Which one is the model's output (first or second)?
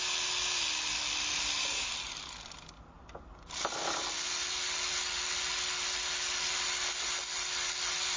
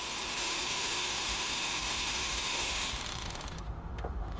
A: second